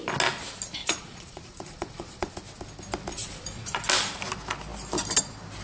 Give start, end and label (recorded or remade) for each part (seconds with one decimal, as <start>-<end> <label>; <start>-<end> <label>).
0.0-0.8 recorded; 0.8-2.3 remade; 2.3-3.1 recorded; 3.1-3.8 remade; 3.8-5.6 recorded